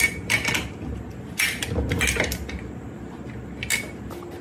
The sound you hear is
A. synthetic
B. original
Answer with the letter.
B